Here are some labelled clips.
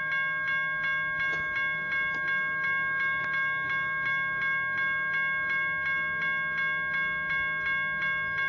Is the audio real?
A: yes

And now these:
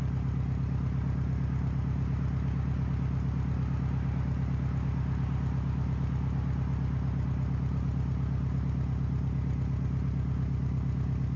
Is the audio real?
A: yes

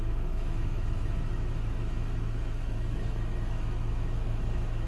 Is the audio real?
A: no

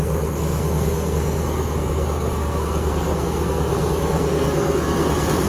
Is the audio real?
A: no